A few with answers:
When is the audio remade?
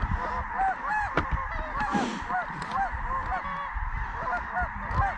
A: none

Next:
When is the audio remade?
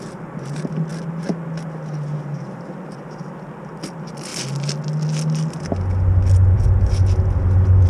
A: none